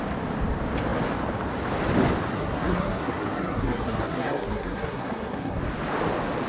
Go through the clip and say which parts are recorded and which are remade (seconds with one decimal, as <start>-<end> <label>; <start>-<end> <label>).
0.0-2.3 recorded; 2.3-5.6 remade; 5.6-6.5 recorded